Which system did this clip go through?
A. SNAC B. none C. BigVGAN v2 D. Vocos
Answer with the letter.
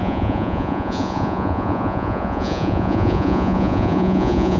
D